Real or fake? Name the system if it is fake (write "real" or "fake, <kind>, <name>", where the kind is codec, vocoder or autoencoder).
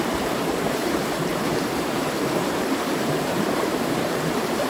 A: fake, vocoder, BigVGAN v2